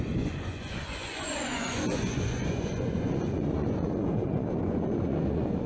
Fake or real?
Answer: fake